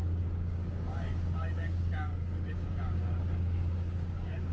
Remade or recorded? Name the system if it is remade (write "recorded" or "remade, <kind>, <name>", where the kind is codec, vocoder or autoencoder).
remade, codec, DAC